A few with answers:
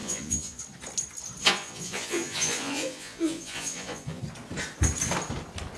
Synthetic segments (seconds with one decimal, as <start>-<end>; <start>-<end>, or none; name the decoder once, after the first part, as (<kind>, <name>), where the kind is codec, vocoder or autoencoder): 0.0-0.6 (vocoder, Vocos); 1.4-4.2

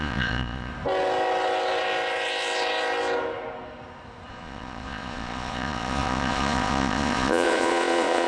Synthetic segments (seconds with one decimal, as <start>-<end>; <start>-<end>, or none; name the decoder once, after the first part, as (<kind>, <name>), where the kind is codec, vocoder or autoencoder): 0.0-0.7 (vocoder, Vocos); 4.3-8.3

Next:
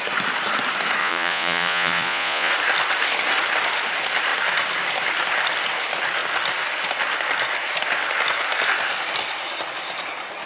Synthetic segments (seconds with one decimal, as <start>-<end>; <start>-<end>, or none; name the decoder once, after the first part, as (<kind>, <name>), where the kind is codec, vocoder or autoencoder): 1.0-2.5 (vocoder, Vocos)